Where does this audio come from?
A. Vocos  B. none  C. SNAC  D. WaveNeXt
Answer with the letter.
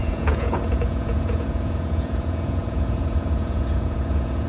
A